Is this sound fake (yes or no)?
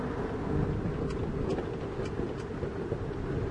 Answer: no